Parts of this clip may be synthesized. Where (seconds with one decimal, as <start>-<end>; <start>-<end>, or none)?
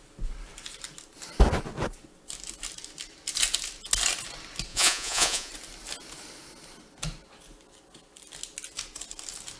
4.7-5.5